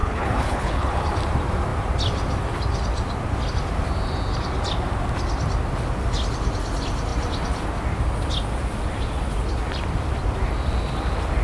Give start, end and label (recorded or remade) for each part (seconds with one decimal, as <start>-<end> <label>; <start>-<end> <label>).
0.0-1.0 remade; 1.0-11.4 recorded